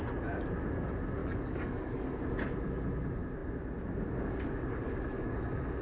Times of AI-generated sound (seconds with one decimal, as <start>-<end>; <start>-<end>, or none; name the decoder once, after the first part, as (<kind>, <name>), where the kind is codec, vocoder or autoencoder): 1.2-2.2 (codec, DAC); 5.1-5.8